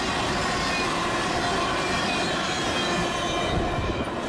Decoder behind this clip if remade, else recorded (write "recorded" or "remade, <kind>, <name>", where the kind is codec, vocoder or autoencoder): recorded